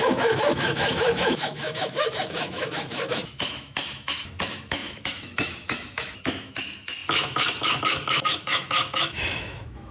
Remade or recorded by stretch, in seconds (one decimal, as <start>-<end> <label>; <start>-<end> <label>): 0.0-9.9 remade